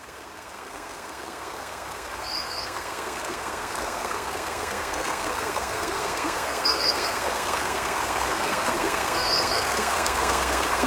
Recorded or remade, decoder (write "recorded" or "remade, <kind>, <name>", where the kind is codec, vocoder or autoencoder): remade, codec, SNAC